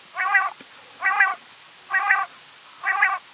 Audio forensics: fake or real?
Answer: real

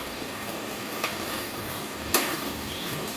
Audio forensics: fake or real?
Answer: fake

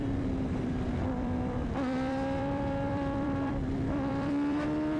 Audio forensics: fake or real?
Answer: fake